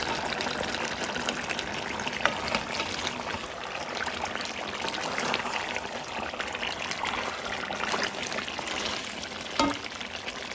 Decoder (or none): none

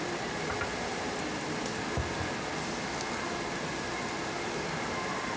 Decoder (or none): none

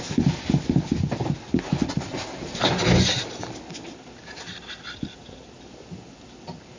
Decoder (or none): none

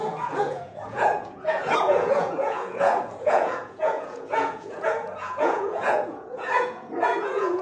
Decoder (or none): vocoder, Vocos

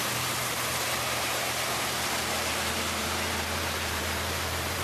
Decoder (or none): vocoder, BigVGAN v2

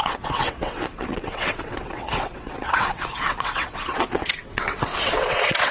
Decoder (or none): vocoder, WaveNeXt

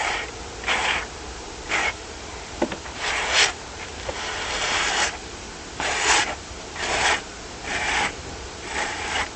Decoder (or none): vocoder, BigVGAN v2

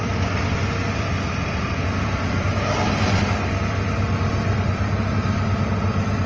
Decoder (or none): none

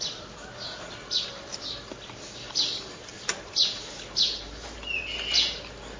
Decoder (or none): none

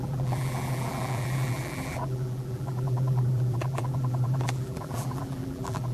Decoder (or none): vocoder, BigVGAN v2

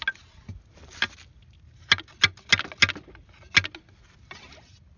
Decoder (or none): none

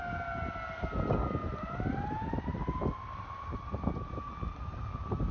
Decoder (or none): none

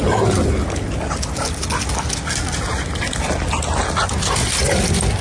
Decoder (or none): none